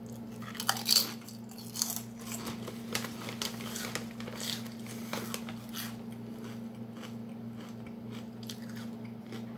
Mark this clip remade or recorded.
recorded